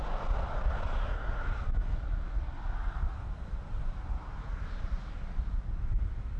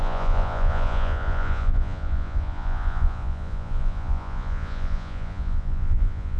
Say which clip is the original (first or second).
first